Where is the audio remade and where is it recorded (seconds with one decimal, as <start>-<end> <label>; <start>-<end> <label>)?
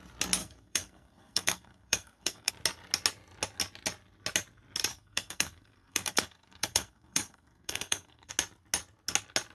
0.0-0.4 recorded; 0.4-2.5 remade; 2.5-4.9 recorded; 4.9-8.3 remade; 8.3-9.5 recorded